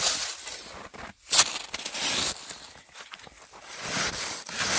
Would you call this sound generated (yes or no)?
no